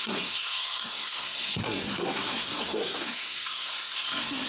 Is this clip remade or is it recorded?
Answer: remade